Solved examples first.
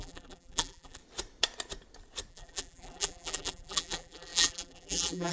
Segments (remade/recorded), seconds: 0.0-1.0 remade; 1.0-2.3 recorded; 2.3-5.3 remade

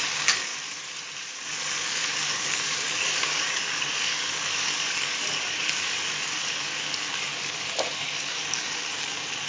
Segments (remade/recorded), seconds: 0.0-0.5 remade; 0.5-1.2 recorded; 1.2-9.5 remade

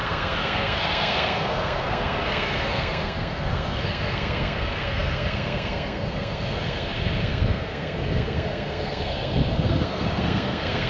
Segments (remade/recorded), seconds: 0.0-10.9 remade

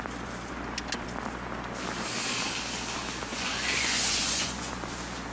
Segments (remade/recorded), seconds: 0.0-3.3 recorded; 3.3-4.7 remade; 4.7-5.3 recorded

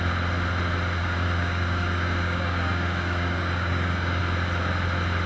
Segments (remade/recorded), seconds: 0.0-1.0 recorded; 1.0-4.2 remade; 4.2-5.3 recorded

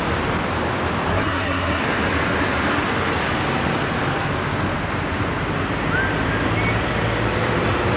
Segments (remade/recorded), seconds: 0.0-1.1 recorded; 1.1-1.8 remade; 1.8-8.0 recorded

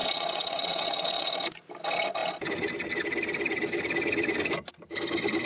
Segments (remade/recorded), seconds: 0.0-1.3 remade; 1.3-5.5 recorded